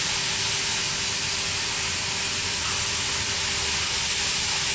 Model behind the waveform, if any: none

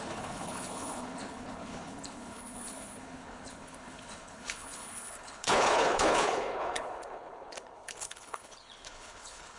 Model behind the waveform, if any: codec, HILCodec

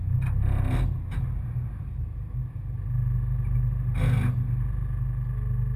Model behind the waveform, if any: none